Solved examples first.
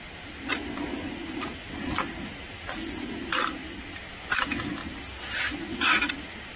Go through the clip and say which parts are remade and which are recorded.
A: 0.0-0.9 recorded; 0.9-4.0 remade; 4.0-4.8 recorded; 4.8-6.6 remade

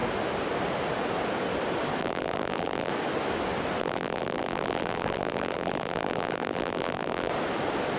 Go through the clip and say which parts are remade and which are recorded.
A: 0.0-2.0 recorded; 2.0-2.9 remade; 2.9-3.8 recorded; 3.8-7.3 remade; 7.3-8.0 recorded

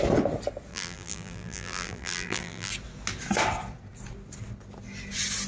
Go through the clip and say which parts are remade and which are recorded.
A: 0.0-0.7 recorded; 0.7-2.7 remade; 2.7-5.5 recorded